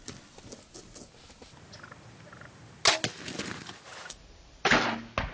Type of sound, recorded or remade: recorded